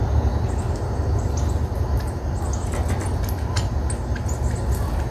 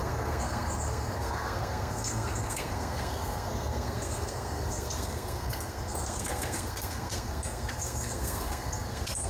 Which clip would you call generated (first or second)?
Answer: second